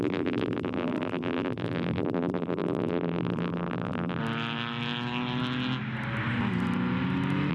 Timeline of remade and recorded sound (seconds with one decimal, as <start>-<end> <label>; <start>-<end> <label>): 0.0-4.2 remade; 4.2-7.5 recorded